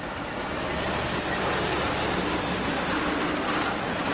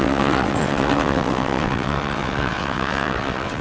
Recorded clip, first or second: first